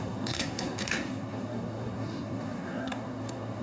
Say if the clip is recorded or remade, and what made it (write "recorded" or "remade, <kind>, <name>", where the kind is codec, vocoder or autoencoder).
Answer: remade, codec, SNAC